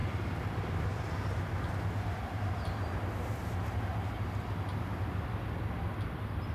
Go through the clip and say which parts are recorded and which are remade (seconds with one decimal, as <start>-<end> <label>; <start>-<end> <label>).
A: 0.0-6.5 recorded